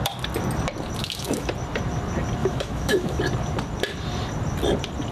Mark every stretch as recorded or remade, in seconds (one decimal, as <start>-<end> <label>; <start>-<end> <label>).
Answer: 0.0-1.0 recorded; 1.0-1.5 remade; 1.5-2.4 recorded; 2.4-3.2 remade; 3.2-5.1 recorded